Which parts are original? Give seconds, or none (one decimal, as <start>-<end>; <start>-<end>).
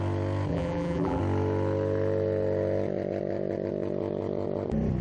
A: 0.0-0.5; 1.2-5.0